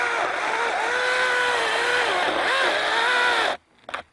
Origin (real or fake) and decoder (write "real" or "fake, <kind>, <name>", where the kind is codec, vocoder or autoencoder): real